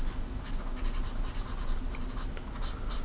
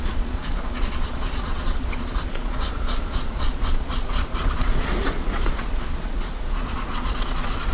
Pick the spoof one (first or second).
second